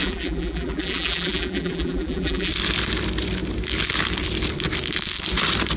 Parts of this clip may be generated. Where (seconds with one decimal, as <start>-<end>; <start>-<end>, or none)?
0.0-2.5

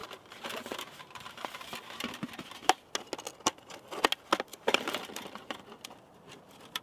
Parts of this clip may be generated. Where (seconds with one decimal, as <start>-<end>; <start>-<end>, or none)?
0.0-2.1; 4.5-5.6

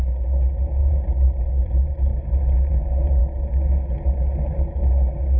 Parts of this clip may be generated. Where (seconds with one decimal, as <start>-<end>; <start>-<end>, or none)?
0.8-1.4; 2.1-2.8

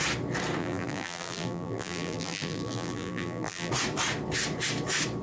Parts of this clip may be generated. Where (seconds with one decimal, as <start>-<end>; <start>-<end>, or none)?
0.6-3.7